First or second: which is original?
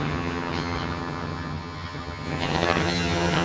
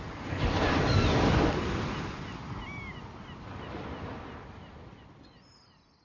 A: second